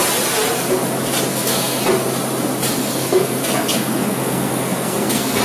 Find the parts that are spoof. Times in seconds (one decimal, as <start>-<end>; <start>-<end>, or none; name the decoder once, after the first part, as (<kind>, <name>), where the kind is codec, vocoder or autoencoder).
1.3-1.8 (codec, SNAC); 2.8-5.4